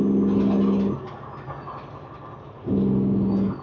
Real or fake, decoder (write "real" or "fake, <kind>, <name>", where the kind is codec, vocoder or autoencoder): real